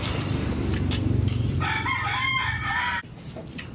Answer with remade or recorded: recorded